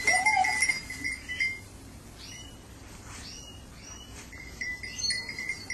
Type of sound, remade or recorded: remade